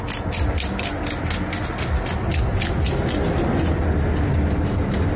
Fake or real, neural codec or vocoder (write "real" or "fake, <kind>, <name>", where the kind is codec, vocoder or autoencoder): real